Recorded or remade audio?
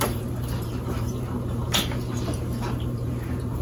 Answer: remade